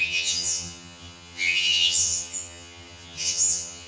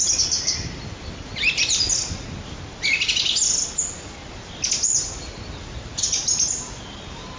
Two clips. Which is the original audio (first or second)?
second